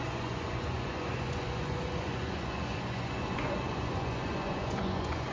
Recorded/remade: remade